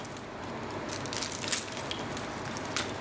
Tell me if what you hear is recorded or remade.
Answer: recorded